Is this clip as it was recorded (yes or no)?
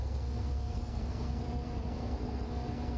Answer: no